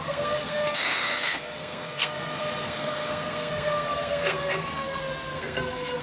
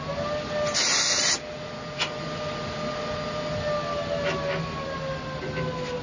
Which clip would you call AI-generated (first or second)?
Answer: first